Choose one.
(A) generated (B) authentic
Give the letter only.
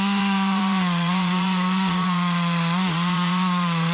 A